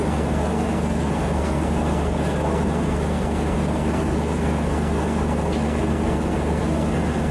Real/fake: fake